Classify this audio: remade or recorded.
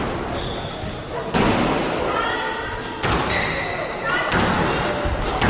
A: recorded